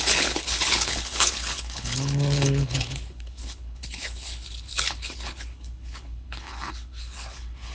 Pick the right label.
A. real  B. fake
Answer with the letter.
B